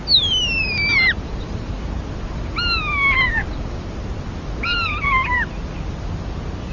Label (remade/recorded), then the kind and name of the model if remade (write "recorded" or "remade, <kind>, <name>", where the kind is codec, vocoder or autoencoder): recorded